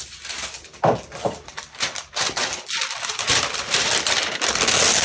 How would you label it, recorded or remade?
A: recorded